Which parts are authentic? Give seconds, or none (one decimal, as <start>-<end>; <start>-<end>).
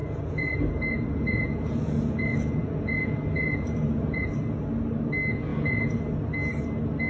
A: 4.3-5.5; 6.0-7.1